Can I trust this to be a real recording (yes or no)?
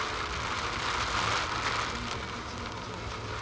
yes